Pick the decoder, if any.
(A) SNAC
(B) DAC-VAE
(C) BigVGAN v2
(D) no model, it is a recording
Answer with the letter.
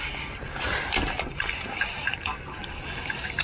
D